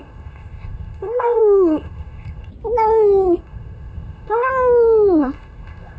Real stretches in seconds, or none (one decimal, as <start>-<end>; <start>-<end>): 2.5-3.4; 4.5-5.2